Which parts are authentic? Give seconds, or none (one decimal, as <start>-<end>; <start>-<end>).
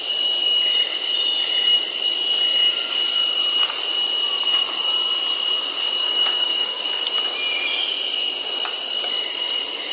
0.0-6.0; 6.8-9.9